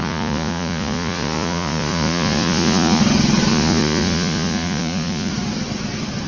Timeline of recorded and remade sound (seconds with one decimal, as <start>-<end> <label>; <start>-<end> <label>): 0.0-3.0 remade; 3.0-3.5 recorded; 3.5-5.3 remade; 5.3-6.3 recorded